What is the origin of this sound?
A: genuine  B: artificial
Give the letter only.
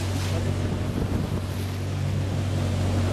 A